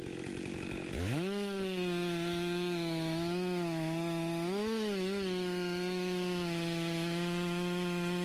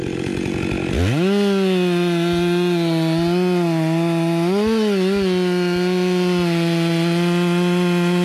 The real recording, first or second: second